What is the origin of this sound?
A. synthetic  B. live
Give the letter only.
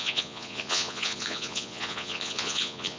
A